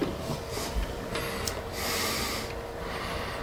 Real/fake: real